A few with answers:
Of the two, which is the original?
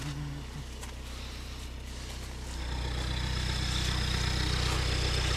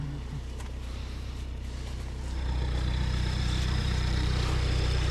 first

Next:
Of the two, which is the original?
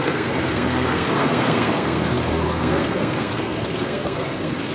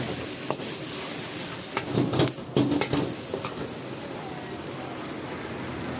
second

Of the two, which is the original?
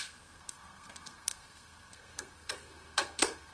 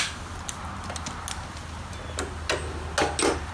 second